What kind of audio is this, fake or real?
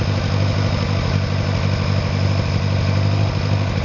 real